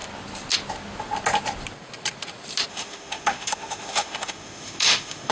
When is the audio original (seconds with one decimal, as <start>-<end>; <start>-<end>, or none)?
0.0-2.7